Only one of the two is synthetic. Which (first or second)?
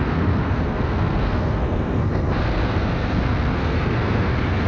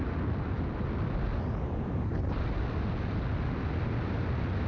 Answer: first